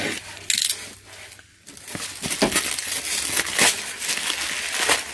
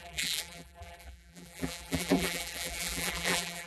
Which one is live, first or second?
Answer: first